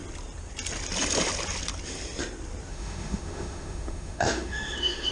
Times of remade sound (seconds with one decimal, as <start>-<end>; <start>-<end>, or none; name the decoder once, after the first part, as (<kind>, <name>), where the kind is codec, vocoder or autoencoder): 2.7-5.1 (autoencoder, DAC-VAE)